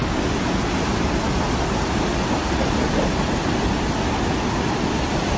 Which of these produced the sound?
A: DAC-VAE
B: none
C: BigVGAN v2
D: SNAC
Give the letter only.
B